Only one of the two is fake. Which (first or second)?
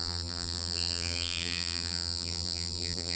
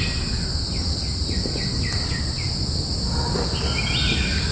first